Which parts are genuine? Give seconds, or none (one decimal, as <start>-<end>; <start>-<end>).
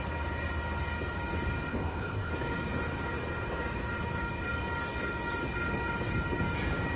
0.0-1.7; 2.3-7.0